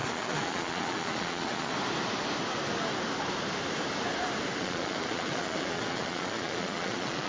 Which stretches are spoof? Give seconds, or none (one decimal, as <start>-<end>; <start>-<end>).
0.0-1.7; 4.6-7.3